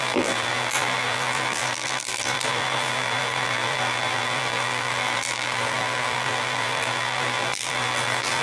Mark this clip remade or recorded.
remade